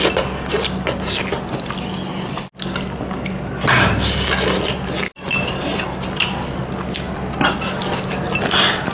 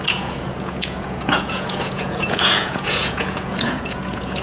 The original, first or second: first